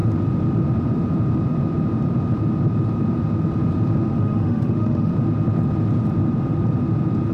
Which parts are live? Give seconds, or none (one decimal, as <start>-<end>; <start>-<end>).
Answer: 0.0-4.2; 5.1-7.3